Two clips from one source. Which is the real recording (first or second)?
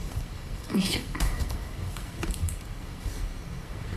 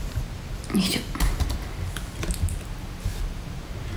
second